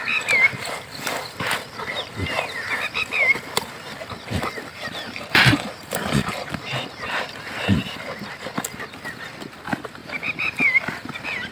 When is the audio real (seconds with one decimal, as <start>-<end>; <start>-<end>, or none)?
0.0-4.7; 6.5-10.0; 10.8-11.5

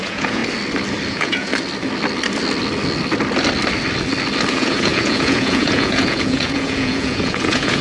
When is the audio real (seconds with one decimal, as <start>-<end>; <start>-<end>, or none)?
0.4-1.1; 1.5-4.5

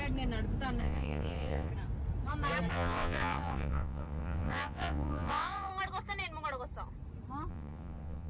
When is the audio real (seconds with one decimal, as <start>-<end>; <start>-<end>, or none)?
0.0-0.8; 1.7-2.7; 5.7-7.5